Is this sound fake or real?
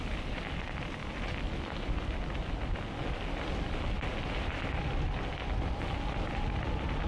real